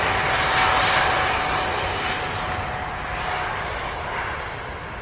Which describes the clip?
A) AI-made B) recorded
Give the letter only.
B